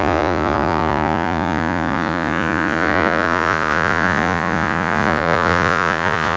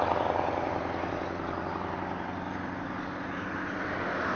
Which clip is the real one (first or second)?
second